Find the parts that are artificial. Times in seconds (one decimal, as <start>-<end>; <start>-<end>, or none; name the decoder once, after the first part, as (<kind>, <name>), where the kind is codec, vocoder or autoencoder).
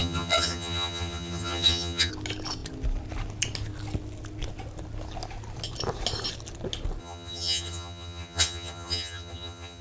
0.0-2.1 (vocoder, HiFi-GAN); 7.0-9.8